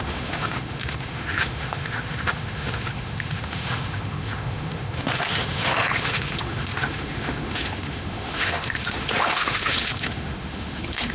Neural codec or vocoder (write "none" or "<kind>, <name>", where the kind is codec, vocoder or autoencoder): autoencoder, DAC-VAE